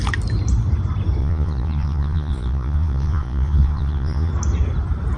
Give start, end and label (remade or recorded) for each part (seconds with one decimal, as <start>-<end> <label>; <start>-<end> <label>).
0.0-1.2 recorded; 1.2-4.3 remade; 4.3-5.2 recorded